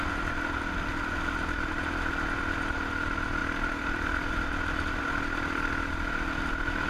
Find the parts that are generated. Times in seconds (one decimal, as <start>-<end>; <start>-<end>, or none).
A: 3.4-5.0